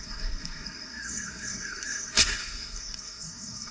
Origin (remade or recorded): remade